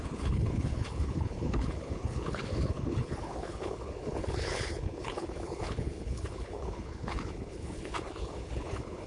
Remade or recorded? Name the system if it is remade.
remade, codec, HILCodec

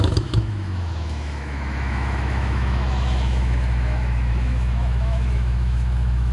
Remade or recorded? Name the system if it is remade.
remade, autoencoder, DAC-VAE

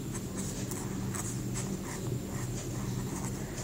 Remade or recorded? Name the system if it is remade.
recorded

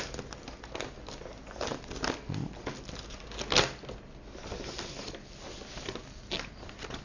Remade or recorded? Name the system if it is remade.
recorded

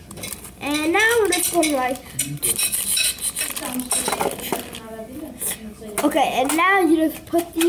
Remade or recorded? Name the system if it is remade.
recorded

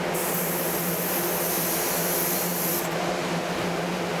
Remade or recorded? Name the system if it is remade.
recorded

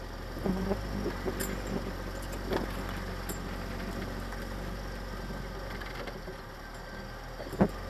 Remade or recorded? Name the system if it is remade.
recorded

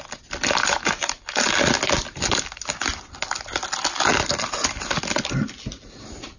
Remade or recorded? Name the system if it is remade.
recorded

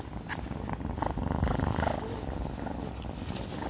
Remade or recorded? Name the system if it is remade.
recorded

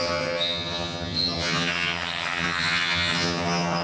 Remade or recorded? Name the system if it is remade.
remade, vocoder, HiFi-GAN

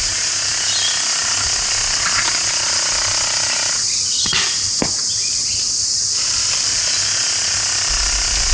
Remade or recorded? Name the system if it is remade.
recorded